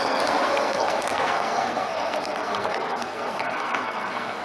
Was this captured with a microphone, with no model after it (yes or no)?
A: no